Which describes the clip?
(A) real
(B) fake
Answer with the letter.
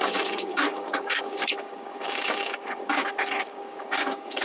B